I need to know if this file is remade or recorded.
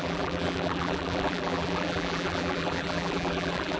remade